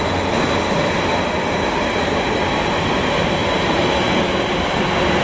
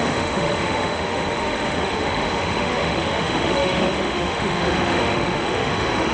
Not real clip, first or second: second